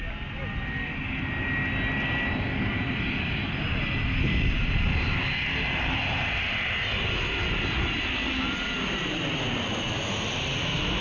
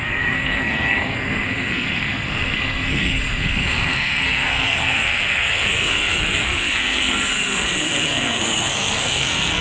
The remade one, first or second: second